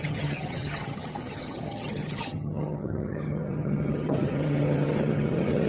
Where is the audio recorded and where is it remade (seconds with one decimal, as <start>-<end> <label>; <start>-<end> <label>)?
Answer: 0.0-5.7 remade